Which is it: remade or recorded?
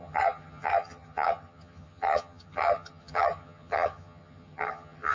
remade